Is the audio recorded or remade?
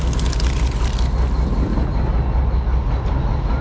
recorded